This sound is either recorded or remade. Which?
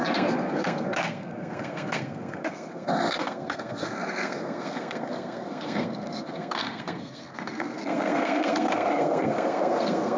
remade